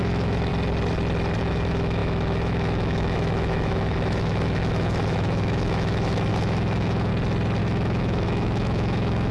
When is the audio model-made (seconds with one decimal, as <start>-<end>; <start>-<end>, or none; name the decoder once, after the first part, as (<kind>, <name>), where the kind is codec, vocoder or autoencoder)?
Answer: 0.0-0.5 (autoencoder, DAC-VAE); 1.4-7.1; 7.6-9.3